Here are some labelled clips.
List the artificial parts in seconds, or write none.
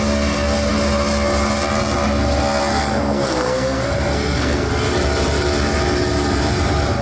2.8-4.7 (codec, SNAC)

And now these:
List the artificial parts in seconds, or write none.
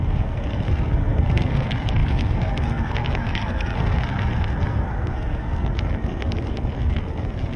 0.0-7.6 (codec, SNAC)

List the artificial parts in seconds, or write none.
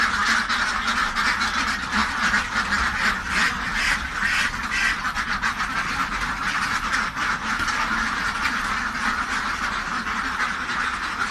none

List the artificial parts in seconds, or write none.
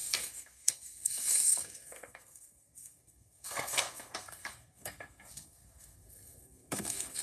0.0-7.2 (codec, SNAC)